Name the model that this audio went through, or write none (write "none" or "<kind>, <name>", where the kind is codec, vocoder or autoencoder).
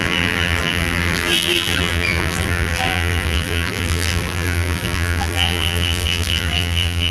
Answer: vocoder, BigVGAN v2